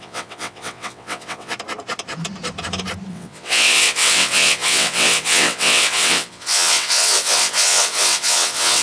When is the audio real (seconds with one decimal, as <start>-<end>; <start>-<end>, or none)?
1.5-3.1